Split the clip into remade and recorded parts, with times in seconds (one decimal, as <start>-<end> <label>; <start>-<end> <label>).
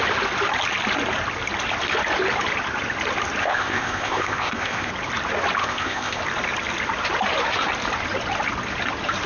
0.0-3.4 recorded; 3.4-4.9 remade; 4.9-5.6 recorded; 5.6-6.2 remade; 6.2-9.3 recorded